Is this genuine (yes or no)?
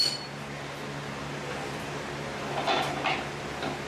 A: yes